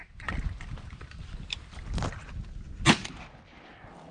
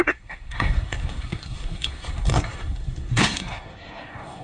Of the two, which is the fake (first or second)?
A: second